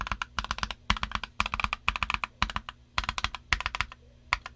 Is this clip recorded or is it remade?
recorded